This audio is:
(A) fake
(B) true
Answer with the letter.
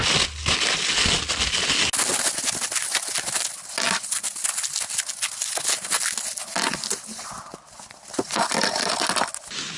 B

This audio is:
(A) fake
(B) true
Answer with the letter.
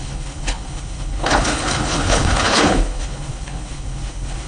A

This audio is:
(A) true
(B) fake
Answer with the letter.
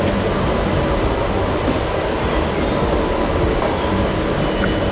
A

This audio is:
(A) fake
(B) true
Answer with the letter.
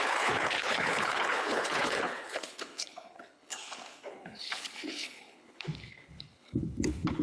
A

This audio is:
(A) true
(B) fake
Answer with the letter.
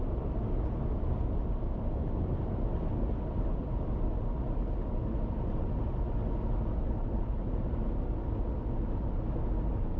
A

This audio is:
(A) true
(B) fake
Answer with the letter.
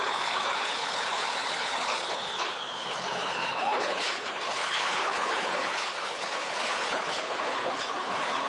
B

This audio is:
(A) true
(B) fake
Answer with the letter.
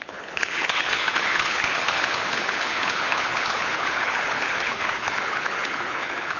B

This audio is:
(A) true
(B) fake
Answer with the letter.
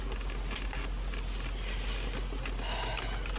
A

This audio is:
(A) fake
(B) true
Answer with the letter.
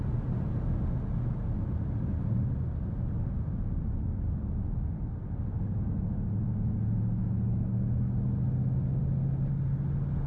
B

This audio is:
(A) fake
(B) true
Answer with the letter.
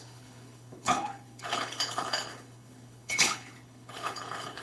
A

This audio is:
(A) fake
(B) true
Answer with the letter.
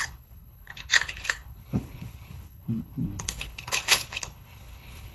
A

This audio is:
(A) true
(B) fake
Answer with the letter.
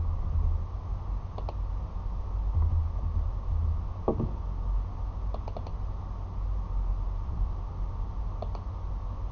A